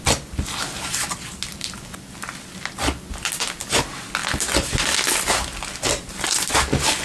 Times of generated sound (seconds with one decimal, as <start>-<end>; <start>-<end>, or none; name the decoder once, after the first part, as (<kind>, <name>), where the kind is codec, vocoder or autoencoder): none